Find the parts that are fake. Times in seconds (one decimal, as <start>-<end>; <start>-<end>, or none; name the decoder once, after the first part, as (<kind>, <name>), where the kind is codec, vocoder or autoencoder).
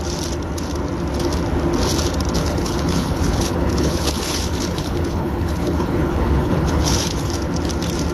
2.4-7.3 (codec, HILCodec)